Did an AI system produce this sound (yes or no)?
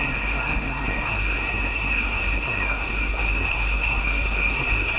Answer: yes